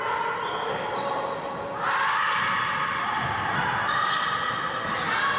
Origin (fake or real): real